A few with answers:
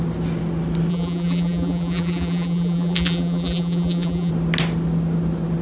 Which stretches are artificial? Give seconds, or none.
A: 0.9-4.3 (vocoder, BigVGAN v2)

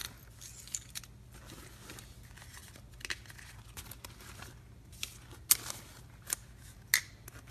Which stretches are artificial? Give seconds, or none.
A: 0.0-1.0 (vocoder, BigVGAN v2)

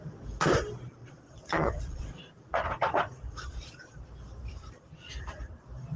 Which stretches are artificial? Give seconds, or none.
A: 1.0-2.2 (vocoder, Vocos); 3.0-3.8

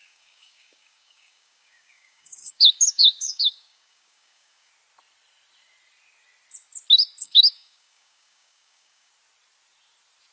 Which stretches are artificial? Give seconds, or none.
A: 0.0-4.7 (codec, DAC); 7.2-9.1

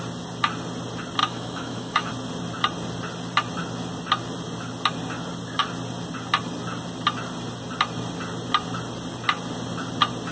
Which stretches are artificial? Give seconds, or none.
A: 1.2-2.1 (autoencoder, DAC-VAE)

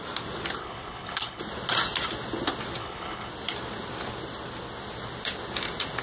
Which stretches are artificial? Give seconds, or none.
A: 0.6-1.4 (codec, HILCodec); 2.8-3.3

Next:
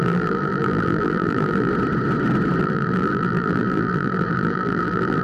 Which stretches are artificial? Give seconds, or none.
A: 0.0-1.7 (vocoder, BigVGAN v2); 2.6-5.2